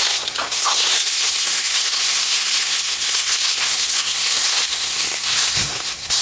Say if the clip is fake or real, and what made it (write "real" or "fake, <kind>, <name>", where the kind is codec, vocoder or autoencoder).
fake, codec, SNAC